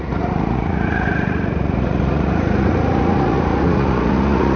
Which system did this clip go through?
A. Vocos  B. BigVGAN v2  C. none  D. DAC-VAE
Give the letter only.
A